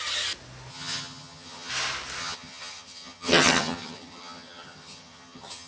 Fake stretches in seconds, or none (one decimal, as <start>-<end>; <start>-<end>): 0.7-1.7; 2.2-5.7

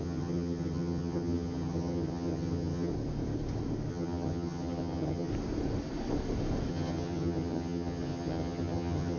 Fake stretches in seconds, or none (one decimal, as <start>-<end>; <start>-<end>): 0.0-2.9; 3.9-5.3; 6.7-9.2

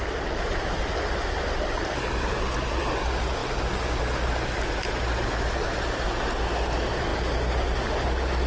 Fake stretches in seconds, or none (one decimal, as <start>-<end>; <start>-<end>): none

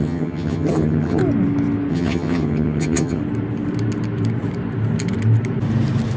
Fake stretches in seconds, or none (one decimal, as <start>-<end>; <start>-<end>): 0.0-1.2; 1.9-3.2

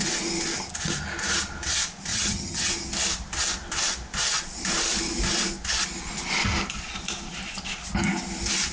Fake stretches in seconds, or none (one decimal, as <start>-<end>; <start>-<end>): 2.1-2.7

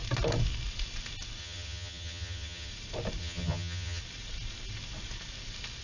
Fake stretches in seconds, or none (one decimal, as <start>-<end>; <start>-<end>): 1.4-2.7; 3.2-4.0

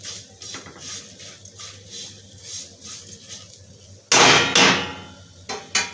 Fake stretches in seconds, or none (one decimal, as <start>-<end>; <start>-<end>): none

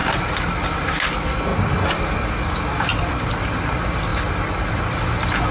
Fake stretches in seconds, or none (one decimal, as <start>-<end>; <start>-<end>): none